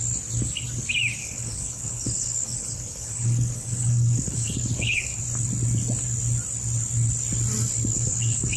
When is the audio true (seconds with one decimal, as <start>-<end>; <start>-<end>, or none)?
0.0-1.2; 5.2-7.9